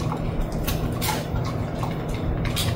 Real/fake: real